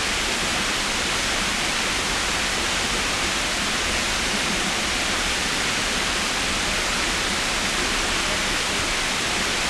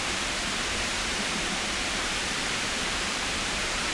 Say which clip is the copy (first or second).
second